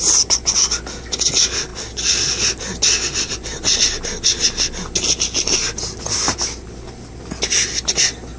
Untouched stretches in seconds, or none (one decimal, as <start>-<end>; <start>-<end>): 0.0-8.4